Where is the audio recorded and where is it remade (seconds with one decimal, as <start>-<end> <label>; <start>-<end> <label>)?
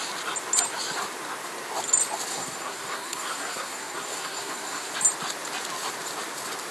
0.0-2.3 recorded; 2.3-4.9 remade; 4.9-6.7 recorded